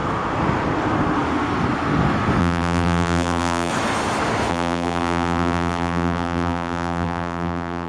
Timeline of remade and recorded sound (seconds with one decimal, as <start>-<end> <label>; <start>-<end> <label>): 0.0-2.4 recorded; 2.4-3.7 remade; 3.7-4.5 recorded; 4.5-7.9 remade